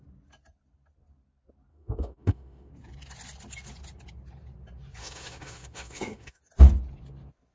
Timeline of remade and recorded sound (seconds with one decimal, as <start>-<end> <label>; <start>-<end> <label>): 0.0-1.7 recorded; 1.7-2.7 remade; 2.7-5.0 recorded; 5.0-6.4 remade; 6.4-7.5 recorded